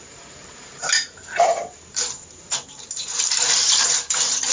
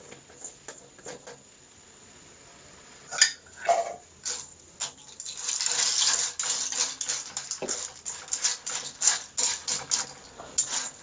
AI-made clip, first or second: first